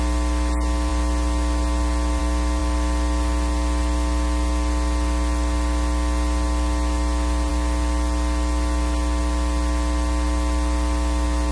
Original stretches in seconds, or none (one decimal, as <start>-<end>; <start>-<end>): 0.0-11.5